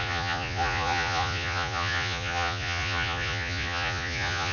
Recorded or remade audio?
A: remade